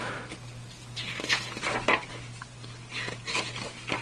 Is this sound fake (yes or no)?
no